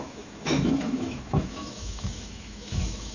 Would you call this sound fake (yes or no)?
yes